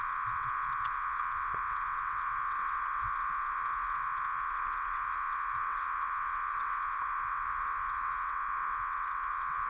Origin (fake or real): fake